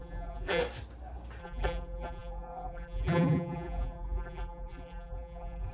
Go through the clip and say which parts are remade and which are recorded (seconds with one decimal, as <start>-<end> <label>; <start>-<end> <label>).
0.0-0.6 remade; 0.6-1.4 recorded; 1.4-5.7 remade